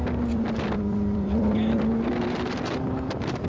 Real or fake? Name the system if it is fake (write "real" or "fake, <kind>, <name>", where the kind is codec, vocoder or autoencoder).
fake, vocoder, BigVGAN v2